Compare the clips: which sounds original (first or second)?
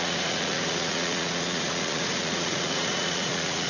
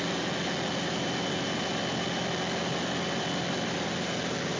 second